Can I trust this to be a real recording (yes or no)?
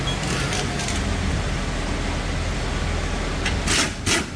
yes